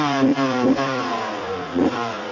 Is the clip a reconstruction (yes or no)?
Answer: yes